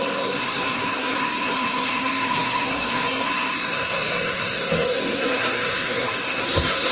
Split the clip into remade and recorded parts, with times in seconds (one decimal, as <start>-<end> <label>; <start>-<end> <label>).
0.0-6.9 remade